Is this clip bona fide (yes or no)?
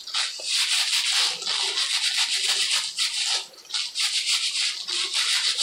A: yes